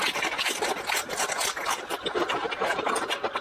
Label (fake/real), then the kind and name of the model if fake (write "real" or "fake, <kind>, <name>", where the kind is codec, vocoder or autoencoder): real